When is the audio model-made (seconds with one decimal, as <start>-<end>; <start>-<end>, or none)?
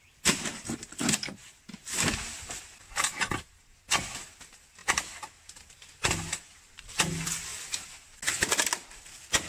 none